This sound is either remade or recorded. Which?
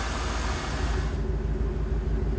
recorded